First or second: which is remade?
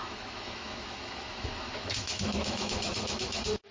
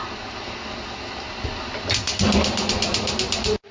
first